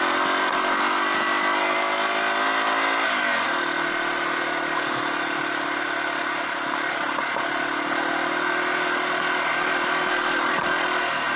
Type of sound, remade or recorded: recorded